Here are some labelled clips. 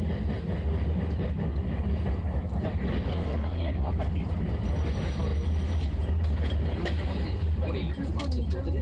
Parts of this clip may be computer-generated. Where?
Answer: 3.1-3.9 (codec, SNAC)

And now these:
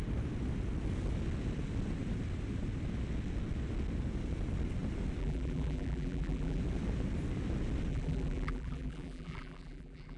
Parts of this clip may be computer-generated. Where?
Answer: 5.2-6.6 (vocoder, BigVGAN v2); 7.9-10.2

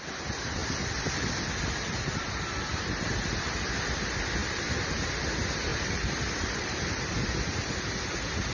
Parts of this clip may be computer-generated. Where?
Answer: 5.7-6.9 (vocoder, BigVGAN v2)

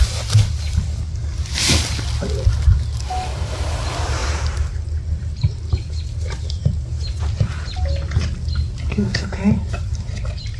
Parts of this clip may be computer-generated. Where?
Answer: 8.9-9.4 (codec, SNAC)